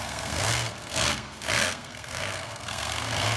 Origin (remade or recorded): remade